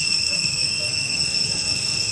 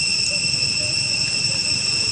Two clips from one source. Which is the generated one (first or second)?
first